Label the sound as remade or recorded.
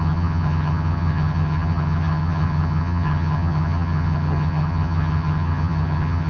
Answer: remade